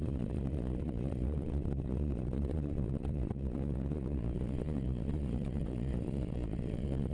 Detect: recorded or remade remade